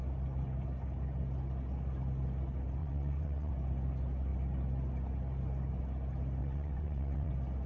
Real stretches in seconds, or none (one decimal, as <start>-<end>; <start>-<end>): 0.0-2.8; 3.5-6.4; 7.3-7.7